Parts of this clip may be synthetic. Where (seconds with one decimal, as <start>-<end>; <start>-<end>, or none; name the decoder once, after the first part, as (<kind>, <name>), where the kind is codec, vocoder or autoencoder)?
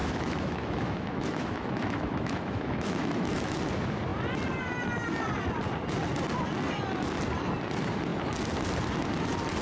0.0-3.6 (autoencoder, DAC-VAE)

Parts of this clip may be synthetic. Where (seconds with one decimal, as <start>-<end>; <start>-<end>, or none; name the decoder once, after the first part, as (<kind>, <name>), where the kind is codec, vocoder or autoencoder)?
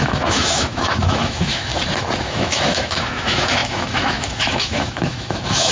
0.0-1.7 (autoencoder, DAC-VAE); 2.2-5.7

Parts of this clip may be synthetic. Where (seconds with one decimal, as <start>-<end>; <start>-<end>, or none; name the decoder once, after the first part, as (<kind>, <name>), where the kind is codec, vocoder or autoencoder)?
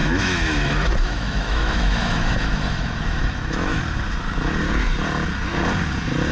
0.0-3.8 (autoencoder, DAC-VAE)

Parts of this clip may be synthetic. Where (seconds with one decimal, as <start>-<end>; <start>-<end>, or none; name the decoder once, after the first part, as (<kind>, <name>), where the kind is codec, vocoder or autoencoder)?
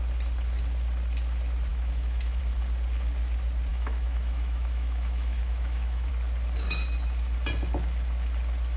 1.7-2.4 (autoencoder, DAC-VAE); 3.7-6.1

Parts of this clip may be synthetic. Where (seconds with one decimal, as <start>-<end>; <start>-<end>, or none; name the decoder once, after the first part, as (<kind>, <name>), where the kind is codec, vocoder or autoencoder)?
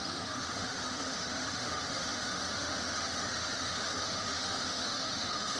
0.0-5.6 (autoencoder, DAC-VAE)